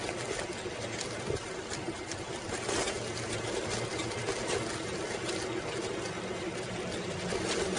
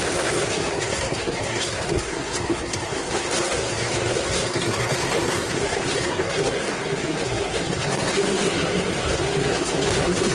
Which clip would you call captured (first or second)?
first